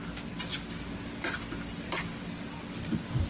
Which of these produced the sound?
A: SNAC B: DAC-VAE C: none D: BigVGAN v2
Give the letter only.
C